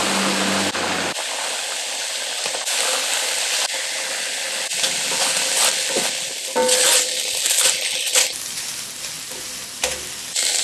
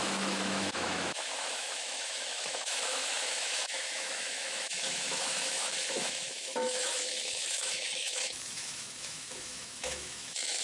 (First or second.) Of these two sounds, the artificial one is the second